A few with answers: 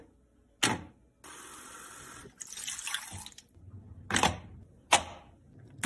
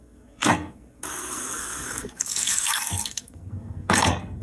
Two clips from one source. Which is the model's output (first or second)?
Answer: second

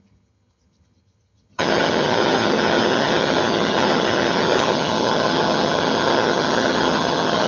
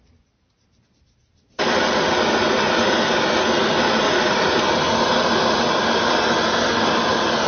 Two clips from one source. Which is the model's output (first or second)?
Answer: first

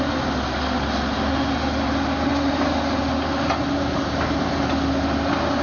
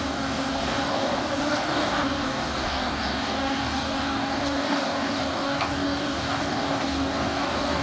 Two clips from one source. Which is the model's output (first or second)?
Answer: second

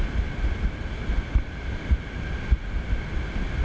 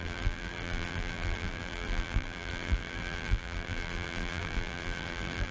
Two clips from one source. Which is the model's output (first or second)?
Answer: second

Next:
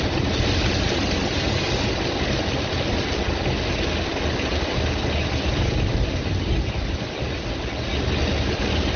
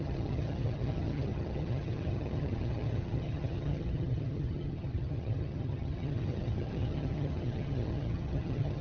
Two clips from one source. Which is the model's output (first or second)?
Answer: second